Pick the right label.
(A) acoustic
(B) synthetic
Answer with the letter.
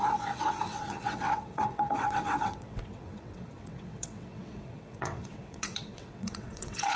B